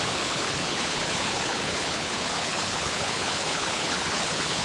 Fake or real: fake